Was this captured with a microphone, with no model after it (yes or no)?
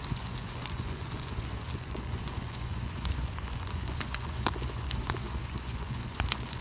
no